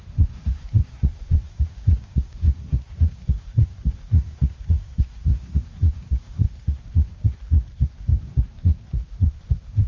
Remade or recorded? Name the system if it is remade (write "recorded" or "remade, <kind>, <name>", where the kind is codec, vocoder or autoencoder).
remade, codec, SNAC